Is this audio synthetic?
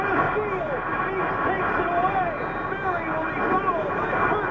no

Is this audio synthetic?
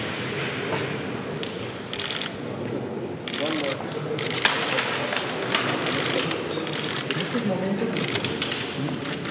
no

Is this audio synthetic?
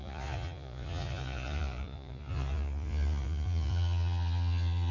yes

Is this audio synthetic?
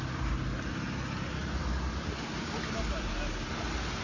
no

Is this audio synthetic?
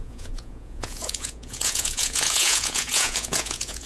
yes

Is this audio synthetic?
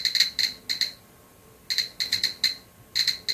no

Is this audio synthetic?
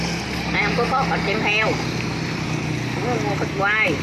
no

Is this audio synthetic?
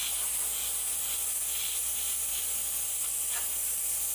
no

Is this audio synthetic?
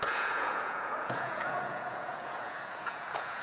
yes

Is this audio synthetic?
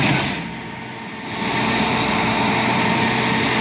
no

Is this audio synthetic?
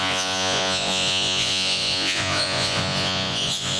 yes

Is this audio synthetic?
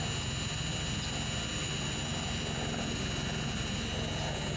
no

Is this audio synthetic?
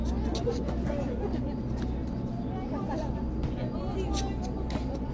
no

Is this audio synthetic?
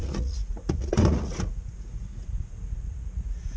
yes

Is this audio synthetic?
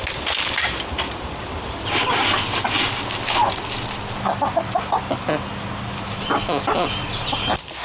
no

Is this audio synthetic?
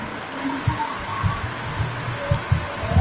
no